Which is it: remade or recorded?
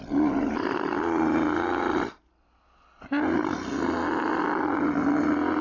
recorded